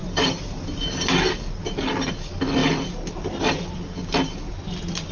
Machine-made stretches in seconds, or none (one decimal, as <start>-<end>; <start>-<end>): none